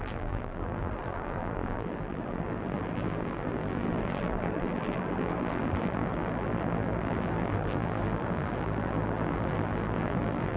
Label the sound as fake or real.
fake